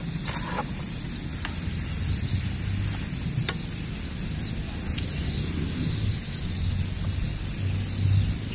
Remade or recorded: recorded